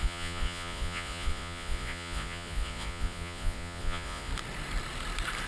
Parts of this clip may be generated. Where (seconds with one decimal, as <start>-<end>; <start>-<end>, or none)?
0.0-4.3